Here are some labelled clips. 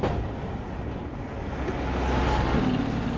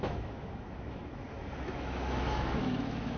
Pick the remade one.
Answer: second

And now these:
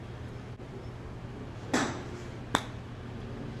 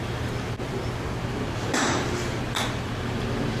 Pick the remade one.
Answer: second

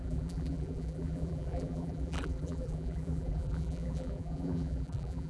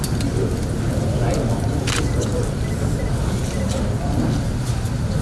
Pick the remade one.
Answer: first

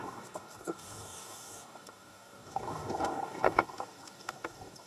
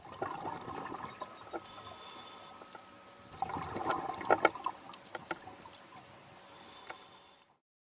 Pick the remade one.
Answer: first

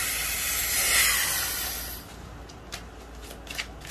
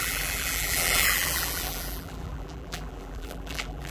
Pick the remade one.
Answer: second